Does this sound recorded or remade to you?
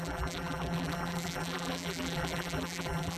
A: remade